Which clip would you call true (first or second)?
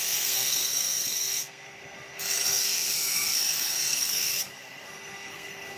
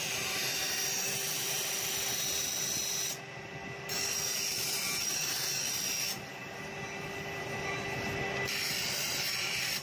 second